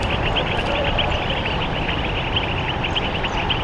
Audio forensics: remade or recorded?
remade